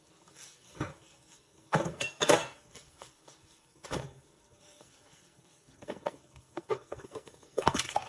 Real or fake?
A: fake